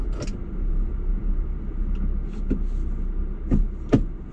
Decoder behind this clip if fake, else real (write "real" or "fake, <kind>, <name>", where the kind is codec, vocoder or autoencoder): real